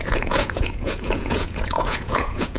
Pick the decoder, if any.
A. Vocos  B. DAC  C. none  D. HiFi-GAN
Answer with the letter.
A